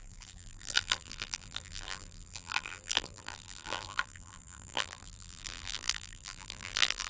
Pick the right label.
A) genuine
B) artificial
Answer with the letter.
B